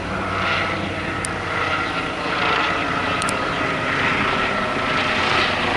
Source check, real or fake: real